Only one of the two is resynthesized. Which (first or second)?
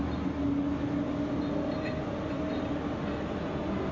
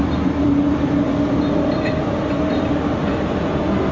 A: second